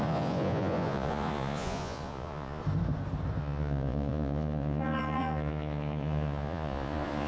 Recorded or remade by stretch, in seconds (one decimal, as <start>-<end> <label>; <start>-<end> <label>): 0.0-2.6 remade; 2.6-3.4 recorded; 3.4-7.3 remade